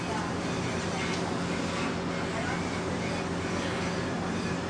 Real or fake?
real